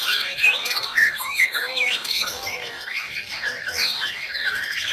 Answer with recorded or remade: remade